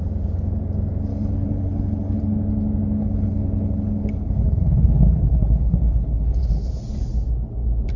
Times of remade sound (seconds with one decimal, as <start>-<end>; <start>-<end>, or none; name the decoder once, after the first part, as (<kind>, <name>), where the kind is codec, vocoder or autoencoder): 1.1-2.2 (codec, HILCodec); 3.0-6.7